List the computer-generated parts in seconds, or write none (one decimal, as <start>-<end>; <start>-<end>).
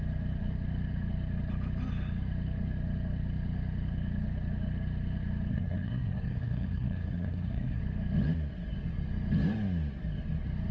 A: 5.5-7.8